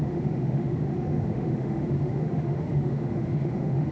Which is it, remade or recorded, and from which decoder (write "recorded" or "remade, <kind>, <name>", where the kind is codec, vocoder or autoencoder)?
remade, autoencoder, DAC-VAE